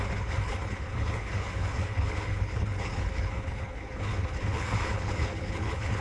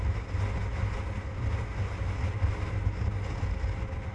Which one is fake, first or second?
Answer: first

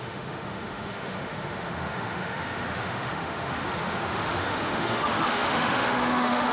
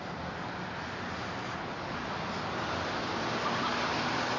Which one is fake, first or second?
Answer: first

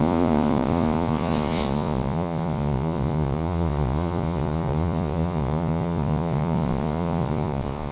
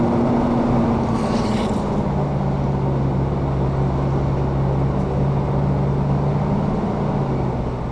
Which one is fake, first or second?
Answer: first